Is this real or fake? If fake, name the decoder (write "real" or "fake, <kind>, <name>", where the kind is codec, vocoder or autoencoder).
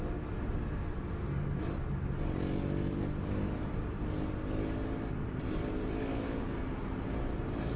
real